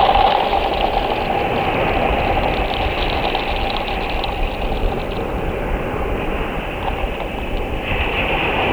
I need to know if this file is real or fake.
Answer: real